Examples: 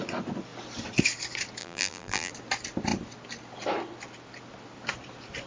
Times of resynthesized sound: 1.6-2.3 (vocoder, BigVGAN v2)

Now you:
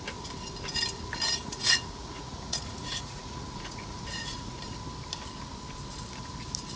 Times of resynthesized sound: 1.4-4.6 (vocoder, Vocos)

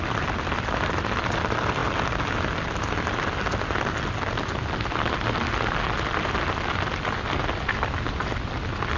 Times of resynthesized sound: none

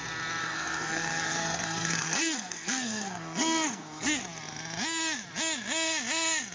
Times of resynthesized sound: 0.4-4.2 (codec, SNAC)

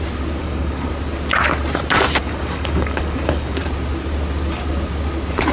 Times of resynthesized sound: 0.4-0.9 (codec, DAC); 2.2-3.6

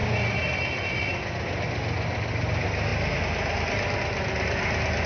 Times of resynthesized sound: none